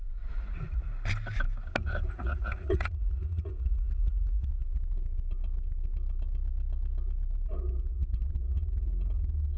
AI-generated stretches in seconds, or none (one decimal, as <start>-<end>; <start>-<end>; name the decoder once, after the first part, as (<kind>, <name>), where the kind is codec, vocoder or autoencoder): 0.0-0.9 (vocoder, Vocos); 2.1-4.5